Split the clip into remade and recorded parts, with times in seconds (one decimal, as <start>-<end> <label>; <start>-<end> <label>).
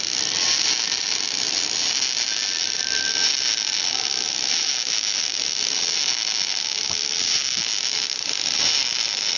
0.0-9.4 remade